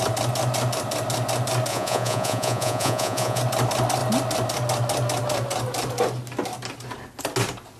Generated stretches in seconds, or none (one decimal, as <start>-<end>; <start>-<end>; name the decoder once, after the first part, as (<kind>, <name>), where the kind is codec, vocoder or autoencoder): 1.7-3.4 (vocoder, Vocos)